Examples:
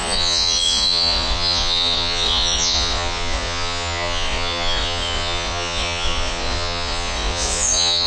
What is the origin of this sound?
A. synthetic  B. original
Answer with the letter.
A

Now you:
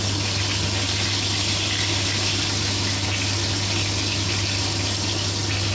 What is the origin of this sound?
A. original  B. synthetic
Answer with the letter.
A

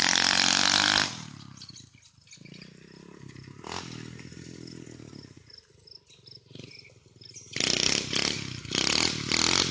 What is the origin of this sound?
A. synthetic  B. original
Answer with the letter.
B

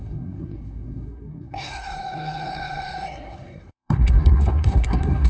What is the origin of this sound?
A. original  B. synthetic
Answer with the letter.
B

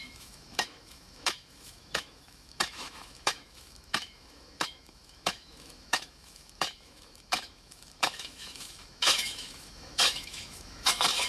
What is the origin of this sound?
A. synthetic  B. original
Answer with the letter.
A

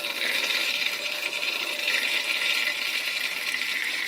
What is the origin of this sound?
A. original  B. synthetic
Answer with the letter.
B